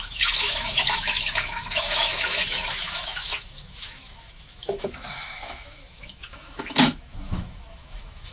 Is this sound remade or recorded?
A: remade